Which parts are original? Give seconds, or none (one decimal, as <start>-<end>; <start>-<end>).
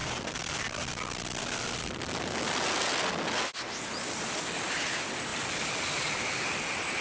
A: 0.0-7.0